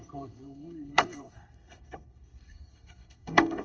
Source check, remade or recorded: remade